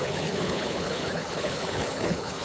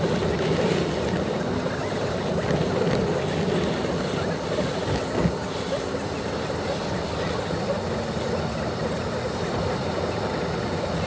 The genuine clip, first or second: second